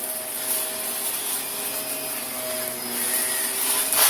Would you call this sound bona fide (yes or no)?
yes